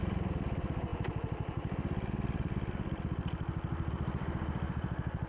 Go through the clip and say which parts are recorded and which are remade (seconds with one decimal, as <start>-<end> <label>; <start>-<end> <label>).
0.0-5.3 recorded